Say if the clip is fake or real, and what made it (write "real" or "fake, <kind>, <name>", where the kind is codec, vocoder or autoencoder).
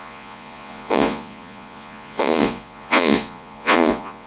fake, vocoder, Vocos